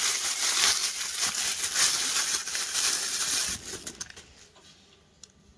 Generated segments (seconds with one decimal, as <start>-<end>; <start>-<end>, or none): none